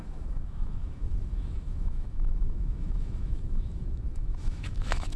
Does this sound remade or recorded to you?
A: remade